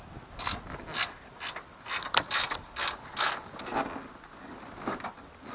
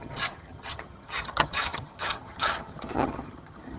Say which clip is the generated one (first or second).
second